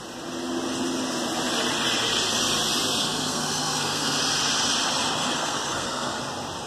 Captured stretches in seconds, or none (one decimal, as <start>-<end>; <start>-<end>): 0.0-3.0; 4.2-5.2; 6.2-6.7